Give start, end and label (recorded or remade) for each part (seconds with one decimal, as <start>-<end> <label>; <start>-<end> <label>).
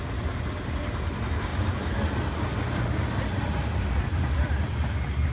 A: 0.0-5.3 recorded